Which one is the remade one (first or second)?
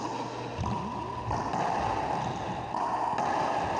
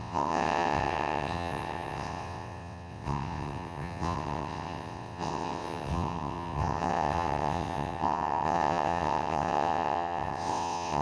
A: second